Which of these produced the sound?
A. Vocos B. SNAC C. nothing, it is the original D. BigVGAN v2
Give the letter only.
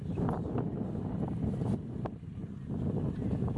C